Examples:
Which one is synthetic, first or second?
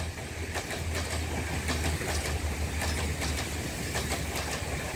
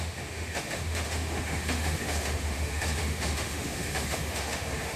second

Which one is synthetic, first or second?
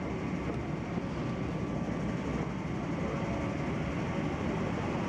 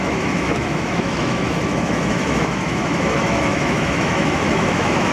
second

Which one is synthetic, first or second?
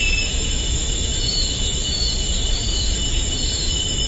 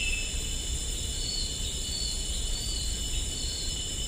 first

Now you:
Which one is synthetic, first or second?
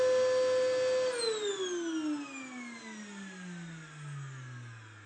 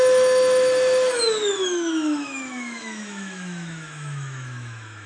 second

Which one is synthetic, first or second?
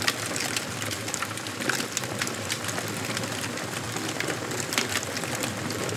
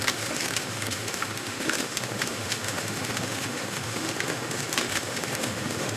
second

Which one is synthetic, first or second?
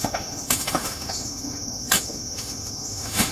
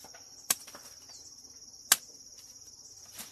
first